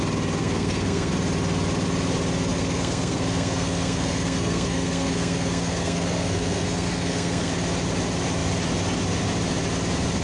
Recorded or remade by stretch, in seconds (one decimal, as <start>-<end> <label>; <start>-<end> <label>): 0.0-0.4 recorded; 0.4-1.1 remade; 1.1-2.5 recorded; 2.5-7.5 remade; 7.5-10.2 recorded